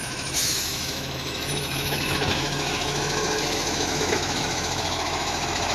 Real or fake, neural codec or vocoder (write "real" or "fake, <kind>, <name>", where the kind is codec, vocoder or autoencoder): fake, autoencoder, DAC-VAE